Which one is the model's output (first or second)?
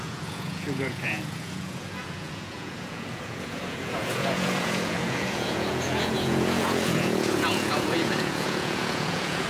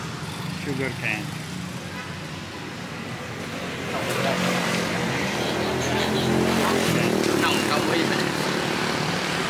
first